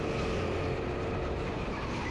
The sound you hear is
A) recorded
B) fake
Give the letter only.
A